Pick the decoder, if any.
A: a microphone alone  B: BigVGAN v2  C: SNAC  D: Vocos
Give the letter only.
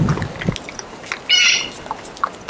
A